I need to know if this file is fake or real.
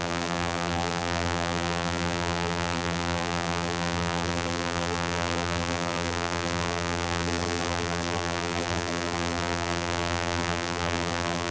fake